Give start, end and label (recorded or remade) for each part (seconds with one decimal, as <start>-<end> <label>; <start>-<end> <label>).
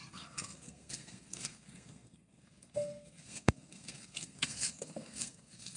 0.0-5.8 remade